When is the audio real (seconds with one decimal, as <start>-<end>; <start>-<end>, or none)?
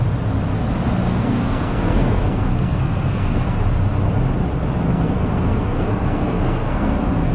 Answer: 0.0-1.1; 3.6-4.9